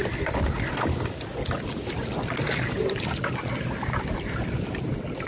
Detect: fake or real real